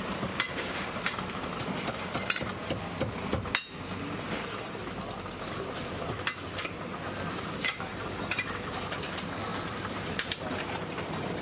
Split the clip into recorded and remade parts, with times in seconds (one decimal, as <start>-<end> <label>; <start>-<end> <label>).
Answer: 0.0-2.5 remade; 2.5-4.0 recorded; 4.0-4.8 remade; 4.8-6.0 recorded; 6.0-11.4 remade